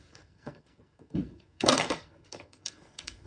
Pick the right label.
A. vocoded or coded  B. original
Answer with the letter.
A